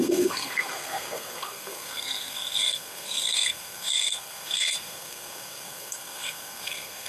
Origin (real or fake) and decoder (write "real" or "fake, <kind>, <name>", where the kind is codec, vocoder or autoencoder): fake, codec, SNAC